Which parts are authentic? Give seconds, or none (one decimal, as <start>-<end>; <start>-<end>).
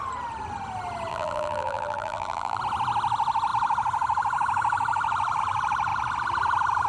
0.0-1.1; 2.6-6.9